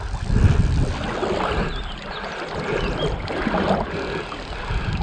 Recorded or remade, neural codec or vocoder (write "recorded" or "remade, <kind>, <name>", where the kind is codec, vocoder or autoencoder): recorded